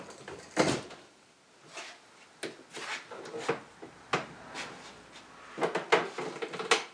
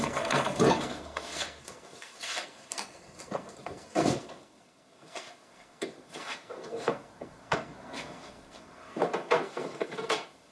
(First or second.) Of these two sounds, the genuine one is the first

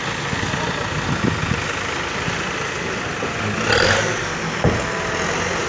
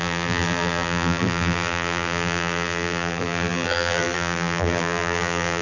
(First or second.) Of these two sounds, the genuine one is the first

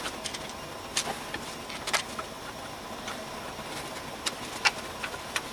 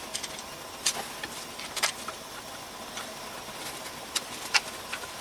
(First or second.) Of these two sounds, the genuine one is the first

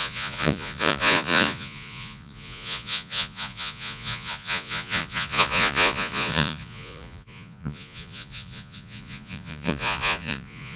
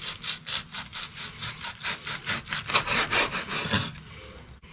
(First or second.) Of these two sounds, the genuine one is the second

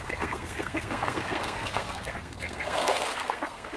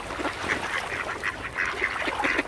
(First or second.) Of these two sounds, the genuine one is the second